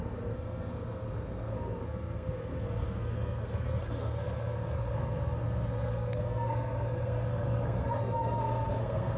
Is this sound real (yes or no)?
no